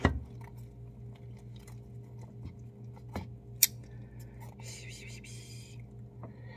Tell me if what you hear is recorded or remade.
recorded